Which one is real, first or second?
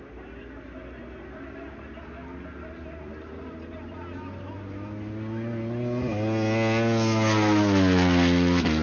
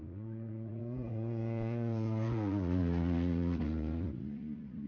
first